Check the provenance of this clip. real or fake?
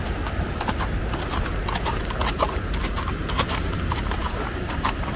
fake